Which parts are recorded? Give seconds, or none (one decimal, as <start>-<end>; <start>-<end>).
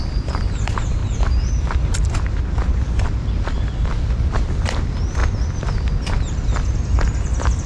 1.0-3.4; 5.2-7.7